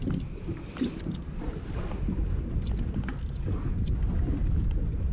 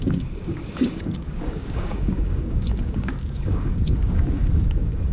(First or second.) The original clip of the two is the first